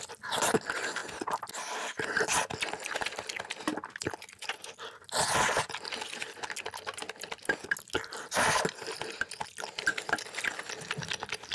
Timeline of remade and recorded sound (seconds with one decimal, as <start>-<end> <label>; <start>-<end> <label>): 0.0-11.5 recorded